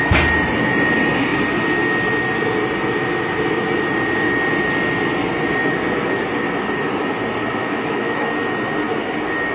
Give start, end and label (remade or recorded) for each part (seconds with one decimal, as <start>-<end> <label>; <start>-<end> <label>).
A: 0.0-7.6 recorded; 7.6-8.3 remade; 8.3-9.5 recorded